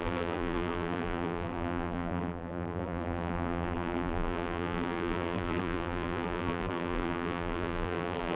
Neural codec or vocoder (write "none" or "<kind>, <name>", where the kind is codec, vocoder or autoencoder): vocoder, BigVGAN v2